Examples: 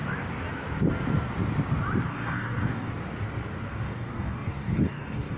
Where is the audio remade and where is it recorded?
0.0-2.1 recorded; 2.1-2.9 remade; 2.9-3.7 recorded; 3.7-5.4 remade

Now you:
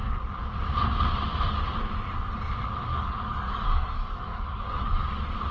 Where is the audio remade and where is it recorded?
0.0-2.9 recorded; 2.9-5.1 remade; 5.1-5.5 recorded

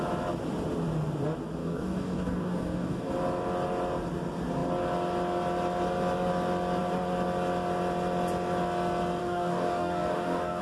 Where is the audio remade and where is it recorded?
0.0-1.6 recorded; 1.6-3.1 remade; 3.1-9.2 recorded; 9.2-10.6 remade

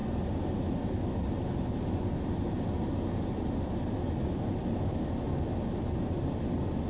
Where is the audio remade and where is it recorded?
0.0-6.9 recorded